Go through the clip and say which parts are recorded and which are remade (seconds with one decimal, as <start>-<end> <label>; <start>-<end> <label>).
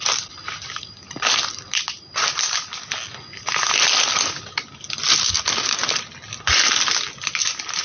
0.0-7.8 recorded